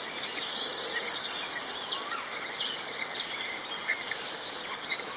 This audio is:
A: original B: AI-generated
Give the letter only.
A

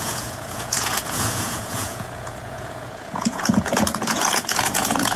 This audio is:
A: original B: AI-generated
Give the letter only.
B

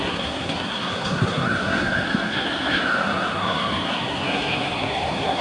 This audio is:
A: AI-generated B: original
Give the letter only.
A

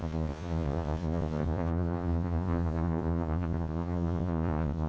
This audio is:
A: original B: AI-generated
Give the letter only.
B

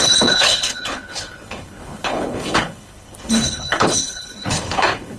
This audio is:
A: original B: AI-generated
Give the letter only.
B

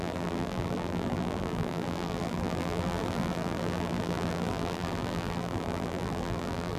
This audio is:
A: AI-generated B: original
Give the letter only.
A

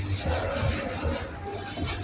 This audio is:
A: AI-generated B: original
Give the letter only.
B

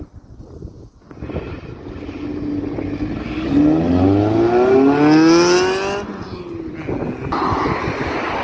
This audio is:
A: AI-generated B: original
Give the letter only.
B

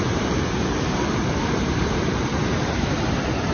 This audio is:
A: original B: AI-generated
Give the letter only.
B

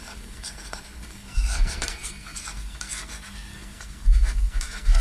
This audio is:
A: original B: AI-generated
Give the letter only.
B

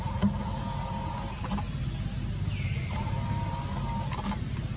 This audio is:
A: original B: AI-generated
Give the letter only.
A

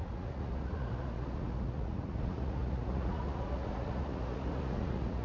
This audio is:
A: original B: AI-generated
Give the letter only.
B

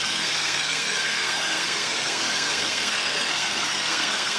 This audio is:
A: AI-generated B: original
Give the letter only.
A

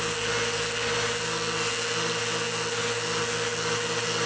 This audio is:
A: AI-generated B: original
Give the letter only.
B